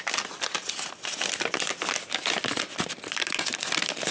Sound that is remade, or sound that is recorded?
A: recorded